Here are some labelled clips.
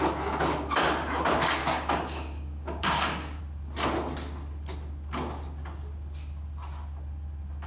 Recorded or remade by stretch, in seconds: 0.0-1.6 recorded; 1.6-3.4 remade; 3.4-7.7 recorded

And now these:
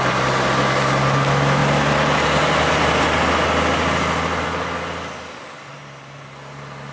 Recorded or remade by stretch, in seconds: 0.0-6.9 recorded

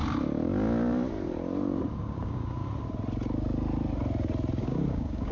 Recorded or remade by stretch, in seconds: 0.0-2.0 recorded; 2.0-2.6 remade; 2.6-4.6 recorded; 4.6-5.3 remade